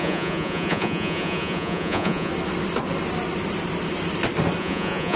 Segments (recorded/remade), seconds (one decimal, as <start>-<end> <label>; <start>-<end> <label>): 0.0-2.3 remade; 2.3-4.6 recorded; 4.6-5.2 remade